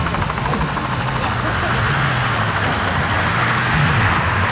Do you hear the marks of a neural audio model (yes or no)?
no